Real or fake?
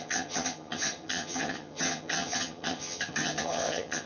fake